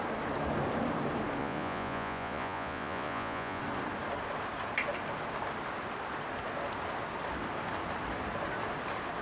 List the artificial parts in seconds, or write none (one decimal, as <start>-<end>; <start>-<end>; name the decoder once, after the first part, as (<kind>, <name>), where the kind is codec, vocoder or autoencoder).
1.4-3.6 (vocoder, Vocos)